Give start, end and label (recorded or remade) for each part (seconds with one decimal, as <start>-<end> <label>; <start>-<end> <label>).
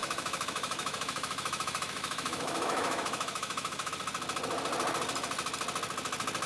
0.0-3.9 remade; 3.9-6.5 recorded